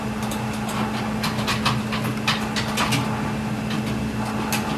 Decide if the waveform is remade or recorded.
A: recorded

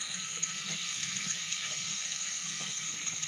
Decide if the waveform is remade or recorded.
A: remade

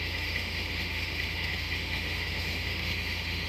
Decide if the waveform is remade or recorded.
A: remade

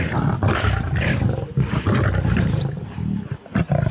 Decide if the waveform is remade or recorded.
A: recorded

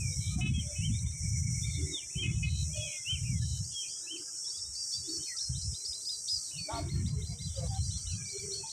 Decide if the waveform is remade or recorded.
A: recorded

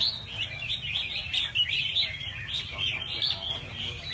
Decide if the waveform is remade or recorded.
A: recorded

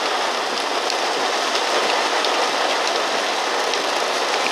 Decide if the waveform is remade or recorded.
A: recorded